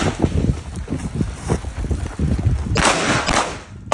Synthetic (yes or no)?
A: no